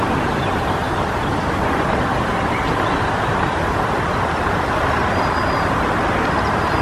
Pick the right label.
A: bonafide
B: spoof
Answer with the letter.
A